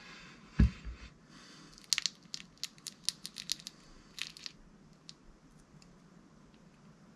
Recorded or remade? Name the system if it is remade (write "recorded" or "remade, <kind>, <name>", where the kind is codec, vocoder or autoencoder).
recorded